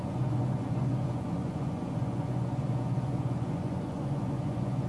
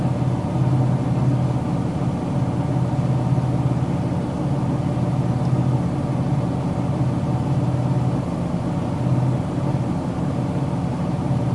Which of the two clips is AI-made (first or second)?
first